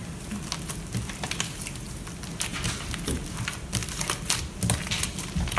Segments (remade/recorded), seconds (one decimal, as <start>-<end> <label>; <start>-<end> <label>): 0.0-5.6 recorded